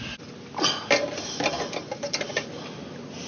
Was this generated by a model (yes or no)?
no